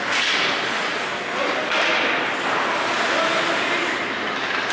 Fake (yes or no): no